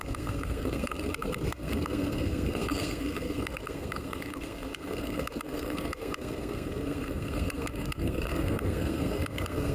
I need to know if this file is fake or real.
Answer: fake